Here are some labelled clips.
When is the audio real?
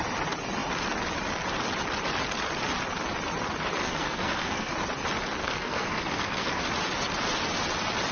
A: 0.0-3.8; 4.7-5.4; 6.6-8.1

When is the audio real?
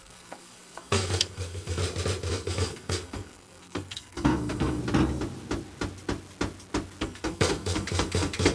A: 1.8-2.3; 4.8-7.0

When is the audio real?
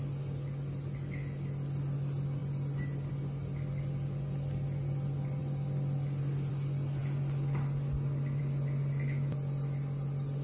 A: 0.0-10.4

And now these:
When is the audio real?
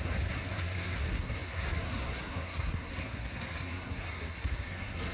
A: none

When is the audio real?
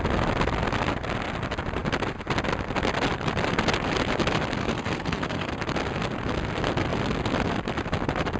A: 0.0-4.6; 5.5-8.4